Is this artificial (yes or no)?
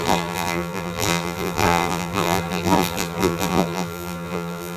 yes